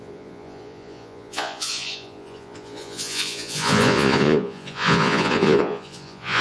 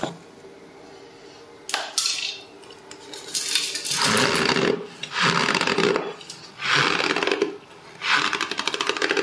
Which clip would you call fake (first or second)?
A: first